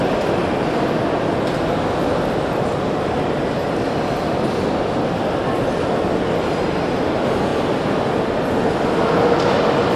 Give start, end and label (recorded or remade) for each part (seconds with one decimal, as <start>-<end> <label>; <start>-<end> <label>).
0.0-7.5 recorded; 7.5-9.1 remade; 9.1-10.0 recorded